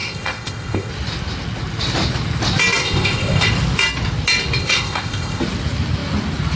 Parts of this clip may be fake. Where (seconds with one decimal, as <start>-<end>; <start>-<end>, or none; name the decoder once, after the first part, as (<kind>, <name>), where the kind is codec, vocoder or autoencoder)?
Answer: 0.0-0.9 (codec, ZipCodec); 2.8-3.5; 4.6-5.4